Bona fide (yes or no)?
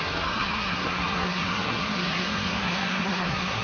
no